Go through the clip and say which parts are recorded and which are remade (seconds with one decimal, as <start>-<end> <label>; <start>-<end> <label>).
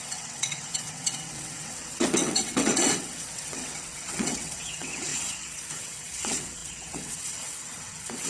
0.0-8.3 remade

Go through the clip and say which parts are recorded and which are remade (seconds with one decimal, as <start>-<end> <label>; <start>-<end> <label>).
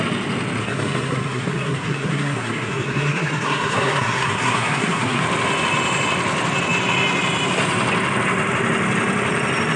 0.0-0.6 recorded; 0.6-5.2 remade; 5.2-9.8 recorded